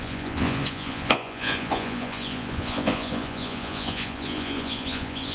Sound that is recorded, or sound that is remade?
remade